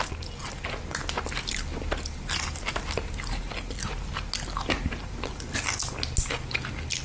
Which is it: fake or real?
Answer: real